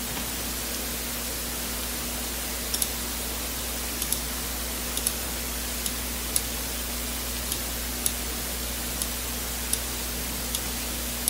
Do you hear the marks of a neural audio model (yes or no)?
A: no